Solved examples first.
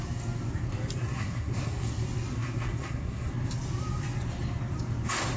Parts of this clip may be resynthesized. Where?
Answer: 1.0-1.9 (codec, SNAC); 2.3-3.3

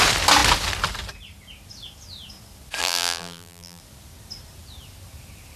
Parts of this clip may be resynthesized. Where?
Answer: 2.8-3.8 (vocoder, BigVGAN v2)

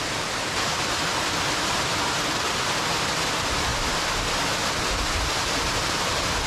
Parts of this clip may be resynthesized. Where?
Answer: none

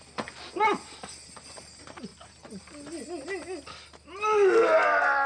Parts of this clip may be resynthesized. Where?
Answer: none

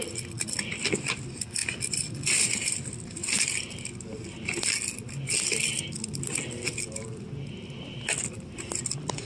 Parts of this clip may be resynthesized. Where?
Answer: none

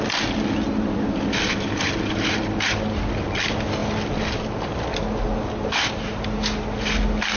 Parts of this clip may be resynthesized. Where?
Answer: none

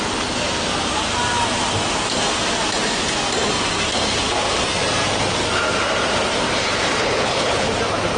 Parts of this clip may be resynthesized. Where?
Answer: 7.0-7.7 (codec, HILCodec)